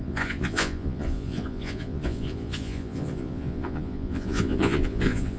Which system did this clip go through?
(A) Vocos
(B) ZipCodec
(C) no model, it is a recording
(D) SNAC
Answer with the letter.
A